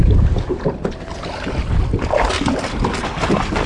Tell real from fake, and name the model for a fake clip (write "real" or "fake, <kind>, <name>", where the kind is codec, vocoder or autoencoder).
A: real